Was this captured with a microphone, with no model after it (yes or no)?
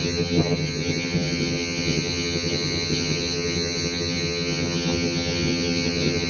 no